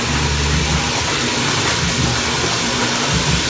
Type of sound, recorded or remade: recorded